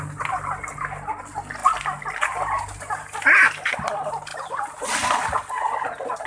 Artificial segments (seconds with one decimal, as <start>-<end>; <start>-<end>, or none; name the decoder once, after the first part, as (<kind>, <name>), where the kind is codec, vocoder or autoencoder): none